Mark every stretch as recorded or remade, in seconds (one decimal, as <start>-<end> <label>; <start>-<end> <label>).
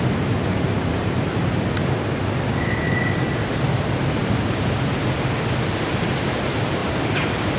0.0-6.8 recorded; 6.8-7.6 remade